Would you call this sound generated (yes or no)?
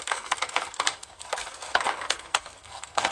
yes